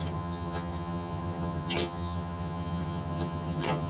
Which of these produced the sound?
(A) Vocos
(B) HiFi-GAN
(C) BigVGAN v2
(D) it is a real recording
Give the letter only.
B